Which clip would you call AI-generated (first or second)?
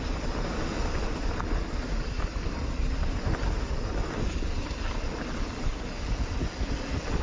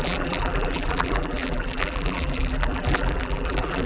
second